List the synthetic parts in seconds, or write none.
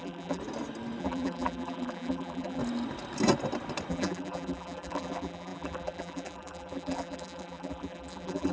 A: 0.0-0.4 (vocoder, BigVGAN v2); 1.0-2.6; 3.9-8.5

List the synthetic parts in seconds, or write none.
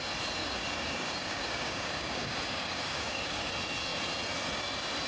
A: 0.4-3.5 (codec, DAC)